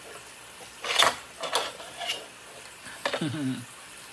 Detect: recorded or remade recorded